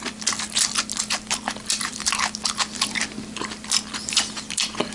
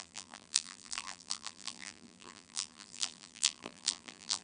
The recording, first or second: first